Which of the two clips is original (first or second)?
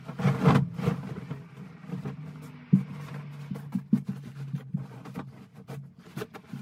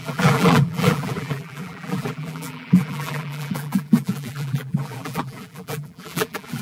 first